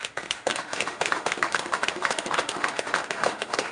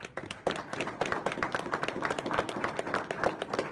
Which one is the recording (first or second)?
second